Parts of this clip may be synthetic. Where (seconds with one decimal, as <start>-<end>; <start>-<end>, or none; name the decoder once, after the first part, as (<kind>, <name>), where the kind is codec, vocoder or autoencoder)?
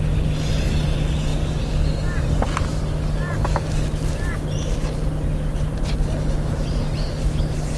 none